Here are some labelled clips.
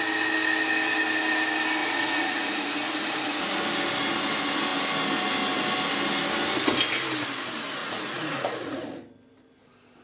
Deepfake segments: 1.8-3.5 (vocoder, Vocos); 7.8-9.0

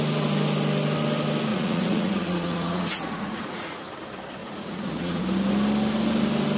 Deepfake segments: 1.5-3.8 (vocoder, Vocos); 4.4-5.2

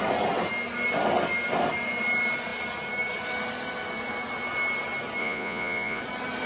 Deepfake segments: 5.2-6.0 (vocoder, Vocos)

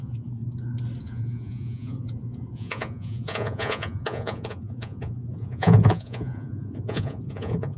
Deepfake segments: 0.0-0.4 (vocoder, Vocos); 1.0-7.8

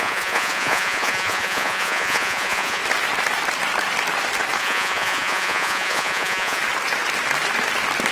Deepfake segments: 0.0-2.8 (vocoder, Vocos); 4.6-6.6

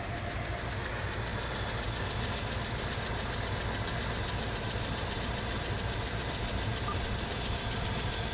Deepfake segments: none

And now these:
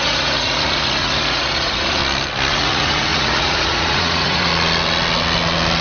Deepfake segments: 0.0-2.0 (vocoder, Vocos); 2.5-4.5